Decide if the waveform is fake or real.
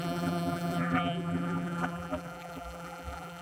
fake